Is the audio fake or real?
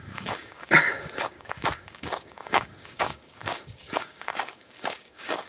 fake